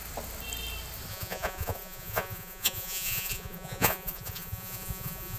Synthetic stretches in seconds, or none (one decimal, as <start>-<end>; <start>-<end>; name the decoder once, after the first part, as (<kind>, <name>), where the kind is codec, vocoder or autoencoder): 1.1-5.4 (vocoder, Vocos)